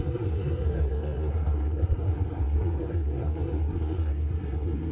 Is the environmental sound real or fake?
fake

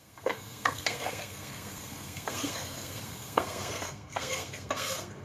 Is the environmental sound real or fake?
fake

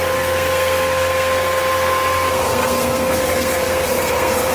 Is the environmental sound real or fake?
fake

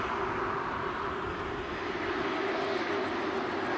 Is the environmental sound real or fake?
real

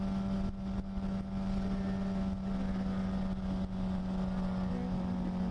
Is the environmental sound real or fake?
real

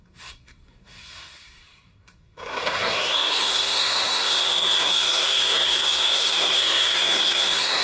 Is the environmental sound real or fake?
fake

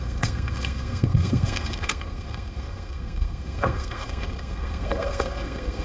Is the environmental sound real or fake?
fake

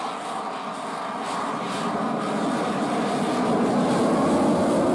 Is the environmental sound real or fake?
real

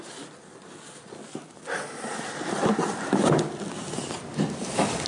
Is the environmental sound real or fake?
real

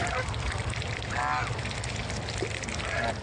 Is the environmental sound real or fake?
real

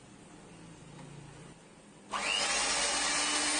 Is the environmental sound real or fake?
real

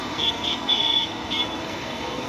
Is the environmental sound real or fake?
fake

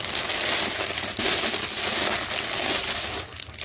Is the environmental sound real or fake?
real